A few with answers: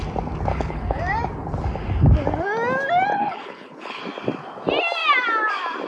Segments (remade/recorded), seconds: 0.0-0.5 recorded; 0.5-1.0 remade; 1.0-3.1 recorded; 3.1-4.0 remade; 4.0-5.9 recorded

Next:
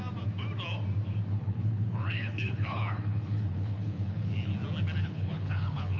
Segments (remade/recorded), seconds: 0.0-1.3 recorded; 1.3-4.5 remade; 4.5-5.0 recorded; 5.0-6.0 remade

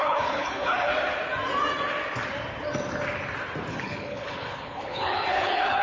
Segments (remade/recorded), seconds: 0.0-0.9 remade; 0.9-3.7 recorded; 3.7-5.8 remade

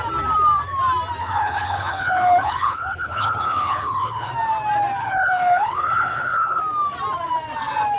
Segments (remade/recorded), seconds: 0.0-1.2 recorded; 1.2-4.3 remade; 4.3-5.0 recorded; 5.0-6.6 remade; 6.6-8.0 recorded